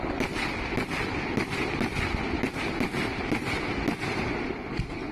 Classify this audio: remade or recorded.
recorded